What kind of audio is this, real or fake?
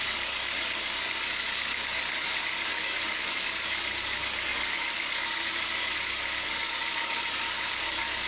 fake